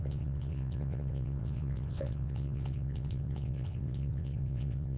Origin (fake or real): fake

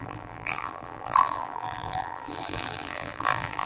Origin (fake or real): fake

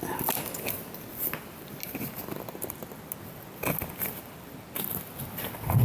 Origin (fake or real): real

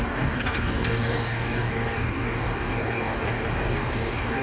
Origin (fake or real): fake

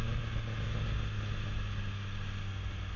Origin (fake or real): real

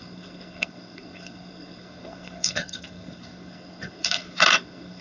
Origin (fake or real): fake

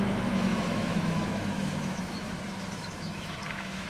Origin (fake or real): fake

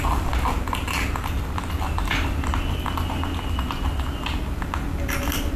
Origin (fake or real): real